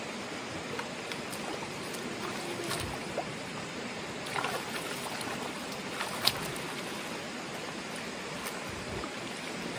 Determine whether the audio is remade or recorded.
remade